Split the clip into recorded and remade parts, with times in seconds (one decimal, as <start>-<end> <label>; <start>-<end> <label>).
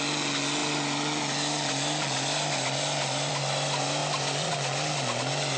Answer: 0.0-0.6 recorded; 0.6-3.3 remade; 3.3-4.0 recorded; 4.0-4.5 remade; 4.5-5.6 recorded